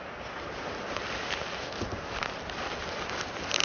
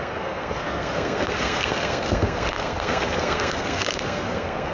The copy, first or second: second